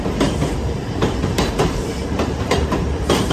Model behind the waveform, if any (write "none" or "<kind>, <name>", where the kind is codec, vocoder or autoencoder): vocoder, BigVGAN v2